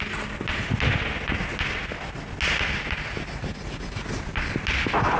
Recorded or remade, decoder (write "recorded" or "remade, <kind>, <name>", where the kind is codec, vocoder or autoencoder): recorded